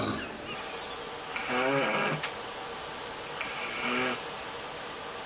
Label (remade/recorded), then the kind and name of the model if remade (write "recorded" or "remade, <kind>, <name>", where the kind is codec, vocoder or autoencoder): recorded